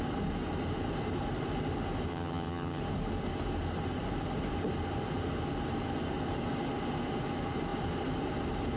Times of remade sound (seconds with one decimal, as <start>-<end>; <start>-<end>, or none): 2.1-2.8